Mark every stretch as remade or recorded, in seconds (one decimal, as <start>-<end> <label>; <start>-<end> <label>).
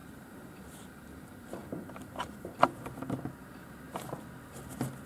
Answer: 0.0-1.2 remade; 1.2-1.6 recorded; 1.6-2.6 remade; 2.6-3.4 recorded; 3.4-4.2 remade; 4.2-5.1 recorded